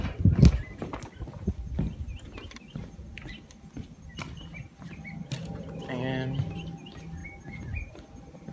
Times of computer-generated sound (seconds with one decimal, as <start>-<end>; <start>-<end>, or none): none